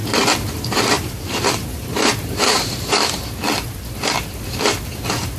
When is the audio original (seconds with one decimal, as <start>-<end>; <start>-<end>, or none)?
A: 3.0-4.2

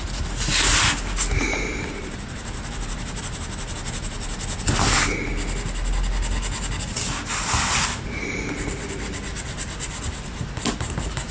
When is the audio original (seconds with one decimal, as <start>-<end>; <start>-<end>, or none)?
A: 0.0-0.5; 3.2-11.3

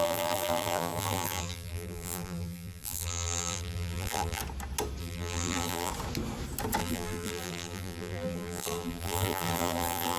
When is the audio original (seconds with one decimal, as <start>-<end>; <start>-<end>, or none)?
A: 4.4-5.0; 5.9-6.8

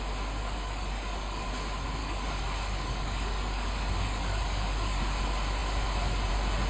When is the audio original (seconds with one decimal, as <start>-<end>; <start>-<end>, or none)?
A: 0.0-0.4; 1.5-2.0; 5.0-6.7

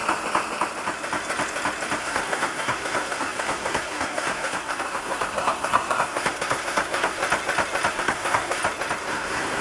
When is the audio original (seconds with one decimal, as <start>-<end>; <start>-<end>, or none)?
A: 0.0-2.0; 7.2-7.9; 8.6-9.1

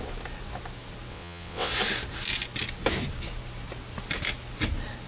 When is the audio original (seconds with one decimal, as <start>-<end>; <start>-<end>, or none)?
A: 0.0-1.1; 1.7-5.1